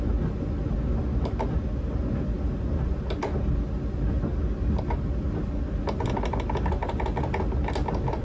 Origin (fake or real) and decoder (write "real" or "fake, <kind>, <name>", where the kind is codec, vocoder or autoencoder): real